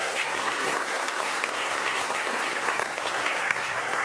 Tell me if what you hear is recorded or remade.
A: remade